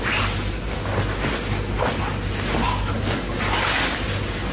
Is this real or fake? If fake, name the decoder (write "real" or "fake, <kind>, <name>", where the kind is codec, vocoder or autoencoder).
real